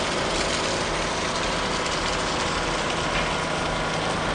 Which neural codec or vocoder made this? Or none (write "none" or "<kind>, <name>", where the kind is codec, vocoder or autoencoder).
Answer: none